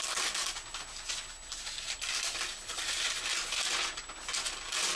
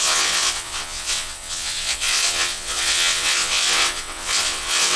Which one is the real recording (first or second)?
first